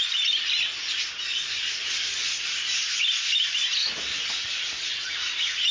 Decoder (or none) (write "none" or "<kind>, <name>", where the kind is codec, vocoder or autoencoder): none